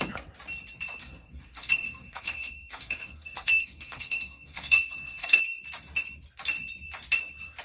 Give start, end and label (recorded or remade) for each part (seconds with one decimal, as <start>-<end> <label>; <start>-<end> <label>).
0.0-1.0 recorded; 1.0-5.4 remade; 5.4-7.6 recorded